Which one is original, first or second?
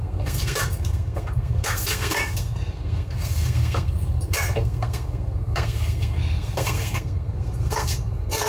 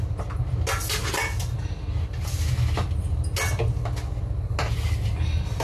second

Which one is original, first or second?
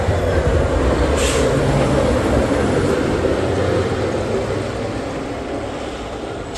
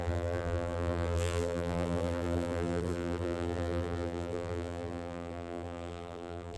first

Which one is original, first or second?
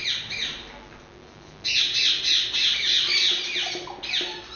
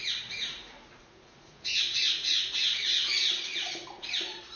first